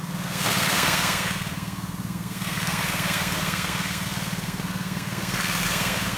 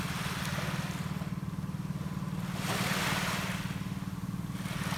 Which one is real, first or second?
second